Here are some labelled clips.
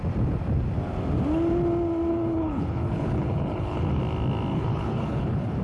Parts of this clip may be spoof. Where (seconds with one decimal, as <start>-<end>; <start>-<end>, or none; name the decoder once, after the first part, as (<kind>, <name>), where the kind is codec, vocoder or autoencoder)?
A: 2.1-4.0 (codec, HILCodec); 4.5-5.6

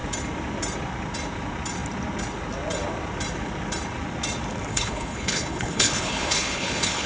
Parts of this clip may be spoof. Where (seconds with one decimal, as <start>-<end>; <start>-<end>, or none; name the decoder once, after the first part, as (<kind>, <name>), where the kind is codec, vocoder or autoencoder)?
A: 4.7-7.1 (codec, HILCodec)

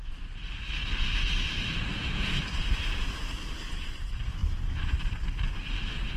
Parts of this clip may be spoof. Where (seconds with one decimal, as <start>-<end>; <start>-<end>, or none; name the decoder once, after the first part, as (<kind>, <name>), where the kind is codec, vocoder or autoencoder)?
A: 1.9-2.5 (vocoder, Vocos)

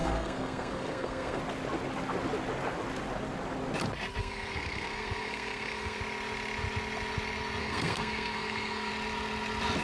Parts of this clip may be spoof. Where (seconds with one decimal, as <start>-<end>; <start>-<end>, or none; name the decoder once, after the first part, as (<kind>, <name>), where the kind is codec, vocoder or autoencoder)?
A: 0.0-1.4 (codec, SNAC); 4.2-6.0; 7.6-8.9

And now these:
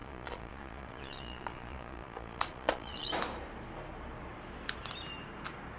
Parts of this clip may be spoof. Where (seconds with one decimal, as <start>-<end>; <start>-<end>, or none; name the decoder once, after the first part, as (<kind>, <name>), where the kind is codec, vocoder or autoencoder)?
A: 0.0-3.1 (vocoder, Vocos)

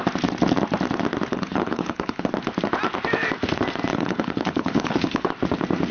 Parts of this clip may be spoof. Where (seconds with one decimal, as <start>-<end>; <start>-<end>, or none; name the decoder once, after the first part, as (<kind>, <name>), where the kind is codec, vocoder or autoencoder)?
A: 1.3-2.3 (codec, HILCodec); 3.9-5.3